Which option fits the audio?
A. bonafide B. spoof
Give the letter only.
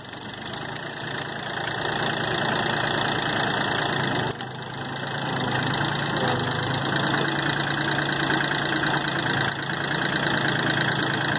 A